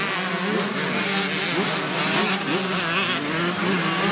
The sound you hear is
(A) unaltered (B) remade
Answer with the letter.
A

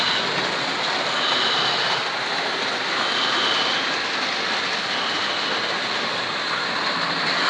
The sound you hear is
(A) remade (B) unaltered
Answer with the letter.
B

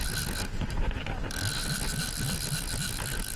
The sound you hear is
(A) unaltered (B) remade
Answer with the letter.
A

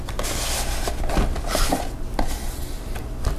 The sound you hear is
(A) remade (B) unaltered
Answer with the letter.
B